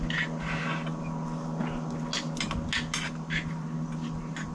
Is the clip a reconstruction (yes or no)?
no